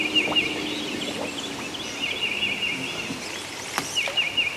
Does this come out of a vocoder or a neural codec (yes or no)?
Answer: no